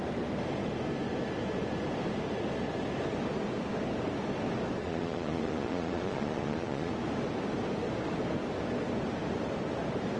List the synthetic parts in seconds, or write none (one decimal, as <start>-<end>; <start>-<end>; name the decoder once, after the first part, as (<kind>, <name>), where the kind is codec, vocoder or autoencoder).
4.8-6.9 (vocoder, Vocos)